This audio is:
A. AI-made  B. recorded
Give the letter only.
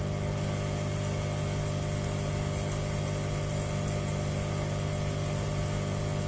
B